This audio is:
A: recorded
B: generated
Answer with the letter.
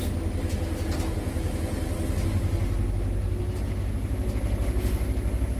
A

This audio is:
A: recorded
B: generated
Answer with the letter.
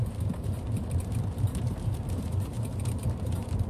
B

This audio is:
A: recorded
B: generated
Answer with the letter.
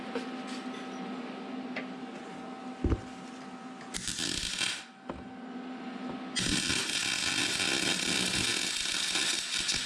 A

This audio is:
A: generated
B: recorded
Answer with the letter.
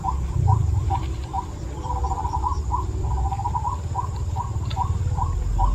A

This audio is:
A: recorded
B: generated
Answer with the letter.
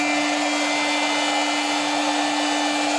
A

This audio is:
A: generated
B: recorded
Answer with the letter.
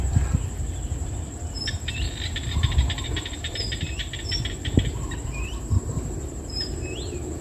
A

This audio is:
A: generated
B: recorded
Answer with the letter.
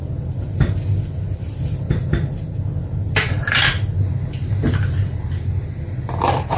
B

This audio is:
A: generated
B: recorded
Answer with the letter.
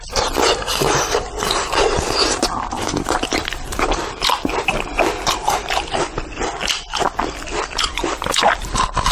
A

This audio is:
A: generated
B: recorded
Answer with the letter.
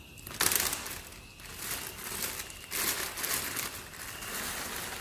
B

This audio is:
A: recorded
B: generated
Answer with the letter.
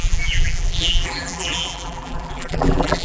B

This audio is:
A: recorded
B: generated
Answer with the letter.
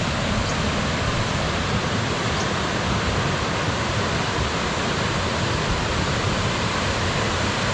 B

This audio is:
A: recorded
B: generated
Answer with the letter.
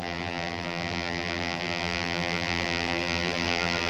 B